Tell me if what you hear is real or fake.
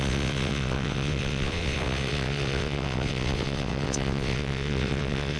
fake